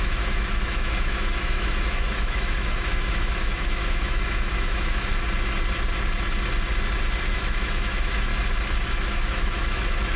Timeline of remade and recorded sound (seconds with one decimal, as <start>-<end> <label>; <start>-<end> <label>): 0.0-5.1 remade; 5.1-7.3 recorded; 7.3-8.3 remade; 8.3-8.9 recorded; 8.9-10.2 remade

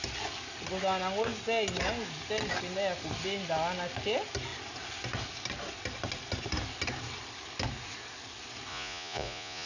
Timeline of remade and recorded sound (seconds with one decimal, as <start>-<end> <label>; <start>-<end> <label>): 0.0-8.7 recorded; 8.7-9.7 remade

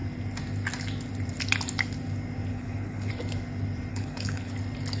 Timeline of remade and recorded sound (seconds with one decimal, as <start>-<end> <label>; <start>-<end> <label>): 0.0-2.5 recorded; 2.5-3.1 remade; 3.1-3.9 recorded; 3.9-4.5 remade; 4.5-5.0 recorded

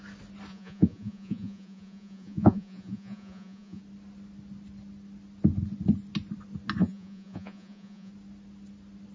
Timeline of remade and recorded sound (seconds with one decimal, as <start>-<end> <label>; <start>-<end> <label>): 0.0-0.5 recorded; 0.5-3.8 remade; 3.8-6.8 recorded; 6.8-8.1 remade; 8.1-9.1 recorded

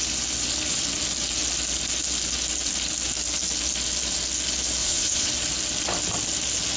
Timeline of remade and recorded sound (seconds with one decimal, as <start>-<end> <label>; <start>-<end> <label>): 0.0-4.8 recorded; 4.8-5.3 remade; 5.3-6.8 recorded

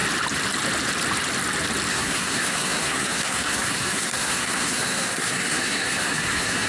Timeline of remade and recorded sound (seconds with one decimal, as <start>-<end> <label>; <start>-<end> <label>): 0.0-1.9 recorded; 1.9-6.7 remade

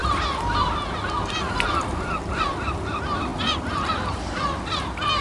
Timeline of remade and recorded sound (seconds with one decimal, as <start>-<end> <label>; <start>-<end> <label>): 0.0-3.3 recorded; 3.3-4.2 remade; 4.2-5.2 recorded

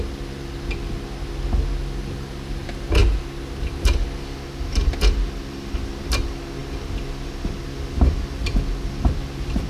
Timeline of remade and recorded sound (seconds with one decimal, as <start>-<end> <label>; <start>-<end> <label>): 0.0-9.7 recorded